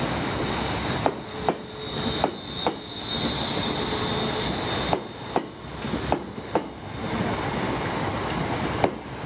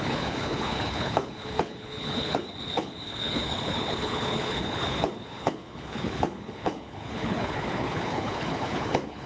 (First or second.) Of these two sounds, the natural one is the first